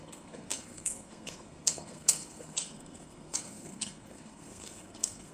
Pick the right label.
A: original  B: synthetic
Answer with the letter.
B